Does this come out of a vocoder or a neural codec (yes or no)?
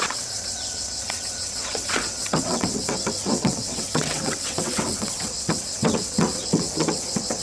yes